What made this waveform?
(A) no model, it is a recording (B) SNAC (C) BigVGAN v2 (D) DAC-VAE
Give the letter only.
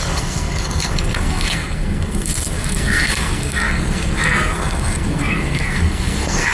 B